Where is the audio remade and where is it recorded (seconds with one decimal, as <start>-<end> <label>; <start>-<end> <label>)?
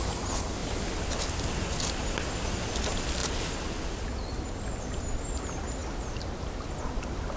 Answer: 0.0-7.4 recorded